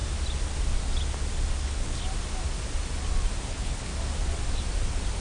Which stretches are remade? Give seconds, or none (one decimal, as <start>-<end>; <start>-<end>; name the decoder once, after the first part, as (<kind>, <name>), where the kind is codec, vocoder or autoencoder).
1.6-2.0 (codec, HILCodec); 3.5-3.9